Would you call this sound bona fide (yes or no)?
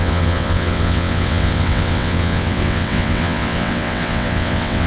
no